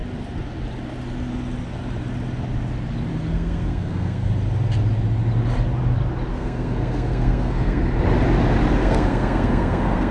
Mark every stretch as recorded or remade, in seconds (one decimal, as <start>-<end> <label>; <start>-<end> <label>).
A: 0.0-3.1 recorded; 3.1-4.3 remade; 4.3-6.3 recorded; 6.3-7.8 remade; 7.8-8.8 recorded; 8.8-10.1 remade